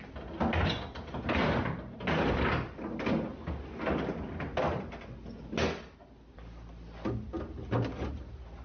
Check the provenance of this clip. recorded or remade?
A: recorded